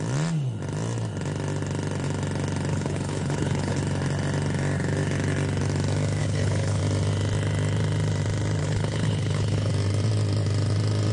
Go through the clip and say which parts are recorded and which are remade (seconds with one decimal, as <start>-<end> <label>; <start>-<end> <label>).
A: 0.0-2.7 recorded; 2.7-3.8 remade; 3.8-6.2 recorded; 6.2-6.8 remade; 6.8-8.6 recorded; 8.6-9.7 remade; 9.7-11.1 recorded

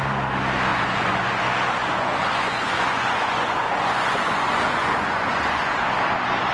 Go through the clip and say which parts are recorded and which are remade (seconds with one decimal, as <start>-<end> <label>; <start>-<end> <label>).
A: 0.0-0.7 recorded; 0.7-1.4 remade; 1.4-1.8 recorded; 1.8-5.7 remade; 5.7-6.5 recorded

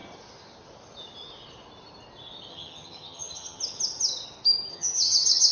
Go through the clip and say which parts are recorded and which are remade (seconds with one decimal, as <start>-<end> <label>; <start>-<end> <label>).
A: 0.0-2.5 recorded; 2.5-3.6 remade; 3.6-4.7 recorded; 4.7-5.5 remade

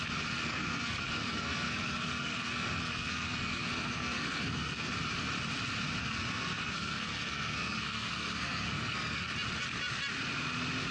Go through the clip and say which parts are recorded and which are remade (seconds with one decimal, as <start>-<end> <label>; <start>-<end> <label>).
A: 0.0-0.4 recorded; 0.4-4.9 remade; 4.9-6.0 recorded; 6.0-9.3 remade; 9.3-10.9 recorded

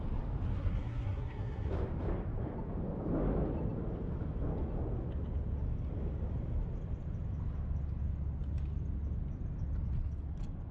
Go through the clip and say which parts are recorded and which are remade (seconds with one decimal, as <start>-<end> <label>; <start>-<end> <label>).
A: 0.0-0.5 recorded; 0.5-1.7 remade; 1.7-10.7 recorded

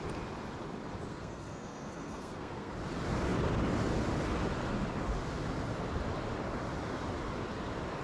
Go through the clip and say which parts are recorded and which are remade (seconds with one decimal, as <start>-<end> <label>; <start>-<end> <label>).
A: 0.0-1.1 recorded; 1.1-2.7 remade; 2.7-8.0 recorded